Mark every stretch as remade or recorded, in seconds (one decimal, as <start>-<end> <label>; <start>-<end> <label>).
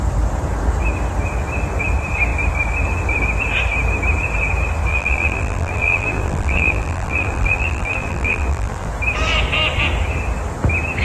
0.0-4.9 recorded; 4.9-8.9 remade; 8.9-11.0 recorded